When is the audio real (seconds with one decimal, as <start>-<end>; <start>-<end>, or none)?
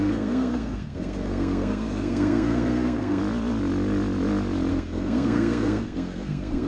3.2-4.7